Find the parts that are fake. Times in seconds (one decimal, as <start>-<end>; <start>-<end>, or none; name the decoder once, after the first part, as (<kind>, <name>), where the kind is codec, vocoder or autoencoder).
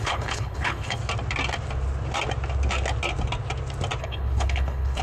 0.0-1.0 (codec, HILCodec); 4.0-5.0